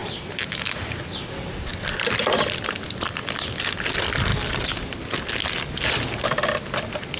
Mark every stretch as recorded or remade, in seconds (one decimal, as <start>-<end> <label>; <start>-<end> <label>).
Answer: 0.0-7.2 recorded